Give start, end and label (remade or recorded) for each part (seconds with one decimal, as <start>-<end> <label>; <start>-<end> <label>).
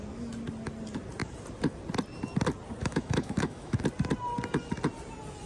0.0-2.8 recorded; 2.8-3.8 remade; 3.8-5.5 recorded